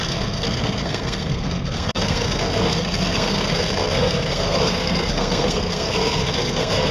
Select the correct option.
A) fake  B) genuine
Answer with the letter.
A